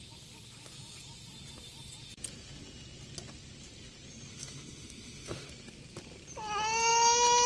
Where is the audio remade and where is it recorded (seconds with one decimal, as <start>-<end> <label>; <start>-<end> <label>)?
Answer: 0.0-4.3 recorded; 4.3-5.5 remade; 5.5-7.5 recorded